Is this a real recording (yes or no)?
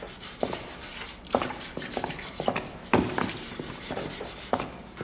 yes